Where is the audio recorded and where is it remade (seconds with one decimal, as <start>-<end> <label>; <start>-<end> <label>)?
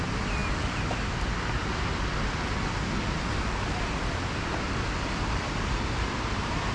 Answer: 0.0-6.7 recorded